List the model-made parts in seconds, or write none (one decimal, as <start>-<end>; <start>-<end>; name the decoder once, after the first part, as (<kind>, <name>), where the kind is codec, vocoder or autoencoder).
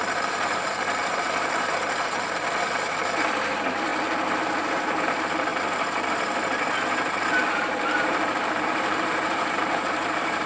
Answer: 0.0-3.9 (vocoder, BigVGAN v2); 4.6-5.5; 7.5-10.5